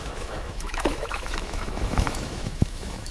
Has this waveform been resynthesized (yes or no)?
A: yes